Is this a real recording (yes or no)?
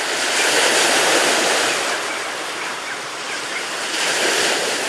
no